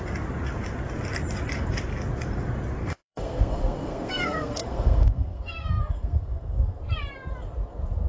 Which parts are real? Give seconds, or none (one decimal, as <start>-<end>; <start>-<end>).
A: 0.0-2.8; 6.8-8.1